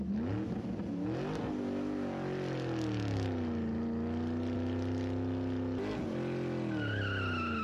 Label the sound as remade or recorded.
recorded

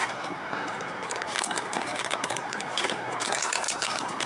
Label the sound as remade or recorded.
remade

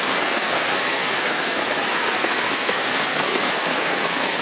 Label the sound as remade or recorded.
remade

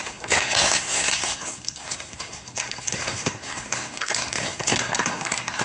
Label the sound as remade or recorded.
remade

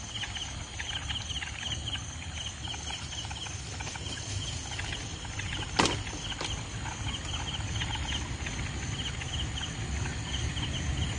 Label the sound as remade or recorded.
recorded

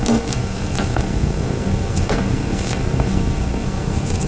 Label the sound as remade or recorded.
remade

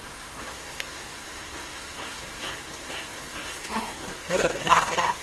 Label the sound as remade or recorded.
remade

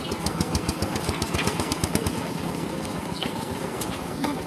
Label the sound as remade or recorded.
remade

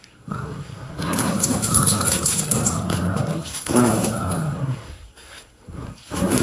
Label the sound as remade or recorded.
remade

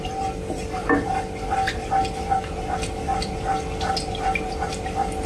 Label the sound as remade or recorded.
recorded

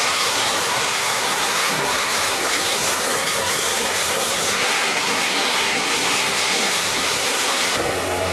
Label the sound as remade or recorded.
remade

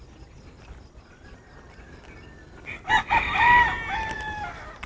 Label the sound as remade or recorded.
recorded